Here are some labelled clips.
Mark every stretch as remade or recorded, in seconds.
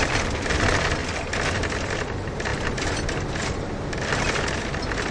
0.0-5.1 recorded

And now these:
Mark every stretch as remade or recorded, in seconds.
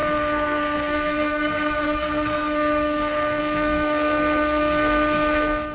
0.0-5.7 remade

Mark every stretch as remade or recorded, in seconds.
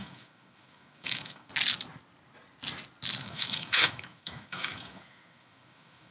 0.0-1.5 remade; 1.5-3.2 recorded; 3.2-6.1 remade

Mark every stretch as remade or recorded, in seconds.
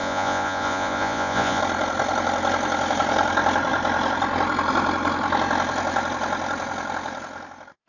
0.0-1.6 remade; 1.6-7.9 recorded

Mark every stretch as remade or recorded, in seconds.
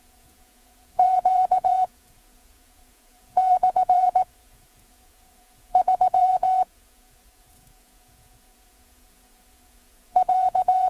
0.0-10.9 remade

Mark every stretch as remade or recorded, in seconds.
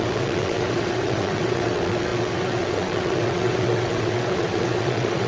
0.0-5.3 remade